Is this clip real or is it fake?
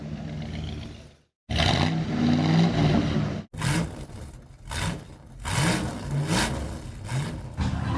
real